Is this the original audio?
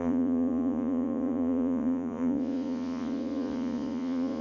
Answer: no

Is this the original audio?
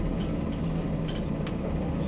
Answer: yes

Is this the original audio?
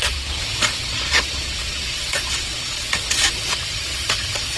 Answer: no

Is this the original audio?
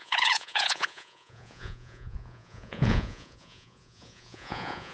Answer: no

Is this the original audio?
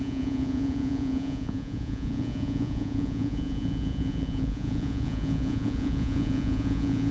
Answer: no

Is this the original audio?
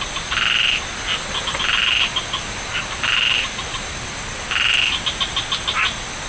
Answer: yes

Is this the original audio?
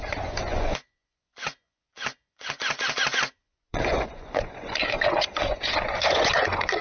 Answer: no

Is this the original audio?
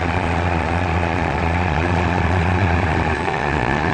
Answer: no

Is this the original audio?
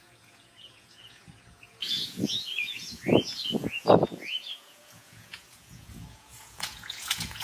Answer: no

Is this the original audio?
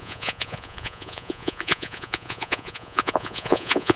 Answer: no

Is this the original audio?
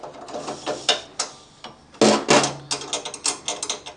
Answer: yes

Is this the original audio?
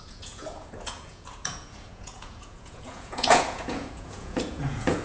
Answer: no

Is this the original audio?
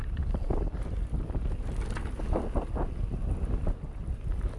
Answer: yes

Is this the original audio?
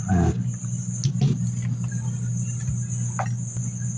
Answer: yes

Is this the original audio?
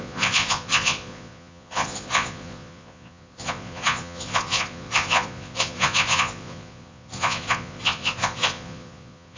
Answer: no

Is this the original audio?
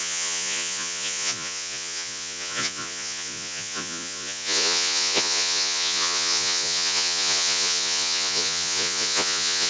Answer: no